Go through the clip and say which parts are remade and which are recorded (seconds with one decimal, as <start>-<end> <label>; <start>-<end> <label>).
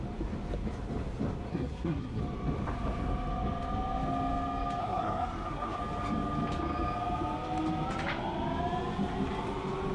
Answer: 0.0-1.5 recorded; 1.5-2.2 remade; 2.2-4.8 recorded; 4.8-5.8 remade; 5.8-9.9 recorded